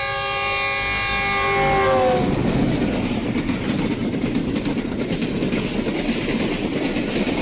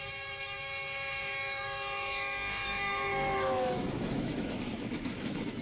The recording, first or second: first